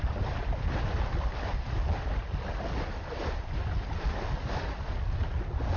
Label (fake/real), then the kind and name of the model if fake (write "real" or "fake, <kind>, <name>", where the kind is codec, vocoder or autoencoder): real